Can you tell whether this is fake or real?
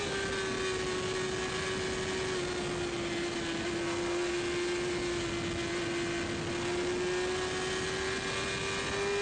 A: real